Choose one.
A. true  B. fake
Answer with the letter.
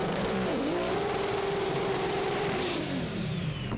B